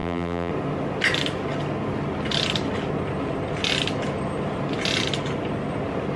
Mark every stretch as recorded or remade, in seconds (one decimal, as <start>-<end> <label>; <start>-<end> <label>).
0.0-0.5 remade; 0.5-6.2 recorded